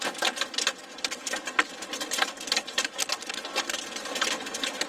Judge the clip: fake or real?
real